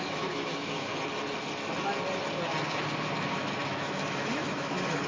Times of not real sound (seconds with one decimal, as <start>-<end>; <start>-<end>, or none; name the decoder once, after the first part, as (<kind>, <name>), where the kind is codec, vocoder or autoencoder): 0.0-0.9 (autoencoder, DAC-VAE); 3.3-5.1

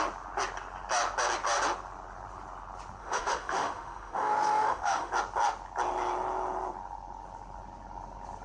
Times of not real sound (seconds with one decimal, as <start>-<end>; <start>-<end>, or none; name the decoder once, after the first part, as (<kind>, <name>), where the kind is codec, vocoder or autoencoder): 3.0-5.1 (autoencoder, DAC-VAE)

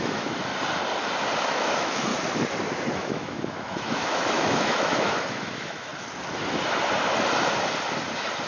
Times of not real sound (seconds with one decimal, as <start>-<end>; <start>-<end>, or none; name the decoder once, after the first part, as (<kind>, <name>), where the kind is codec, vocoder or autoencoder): 0.0-0.5 (autoencoder, DAC-VAE); 1.4-2.1; 2.9-5.9

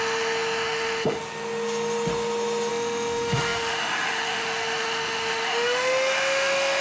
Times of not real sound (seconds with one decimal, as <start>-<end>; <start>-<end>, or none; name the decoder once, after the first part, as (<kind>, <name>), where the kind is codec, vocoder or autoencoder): 0.0-1.2 (autoencoder, DAC-VAE); 2.7-6.8